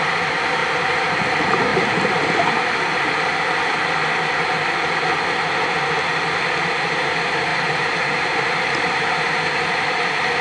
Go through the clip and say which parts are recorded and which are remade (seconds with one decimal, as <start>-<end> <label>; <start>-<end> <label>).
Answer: 0.0-0.6 recorded; 0.6-1.2 remade; 1.2-7.5 recorded; 7.5-9.4 remade; 9.4-10.4 recorded